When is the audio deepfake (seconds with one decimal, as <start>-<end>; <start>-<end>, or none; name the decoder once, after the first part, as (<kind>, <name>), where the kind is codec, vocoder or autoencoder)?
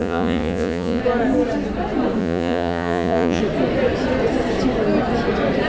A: 0.0-1.0 (vocoder, Vocos); 2.2-3.4